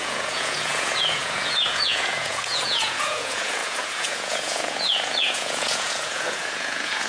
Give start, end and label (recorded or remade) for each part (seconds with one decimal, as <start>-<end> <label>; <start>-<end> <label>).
0.0-7.1 remade